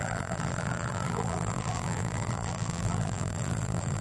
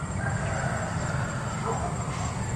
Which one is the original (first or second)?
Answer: second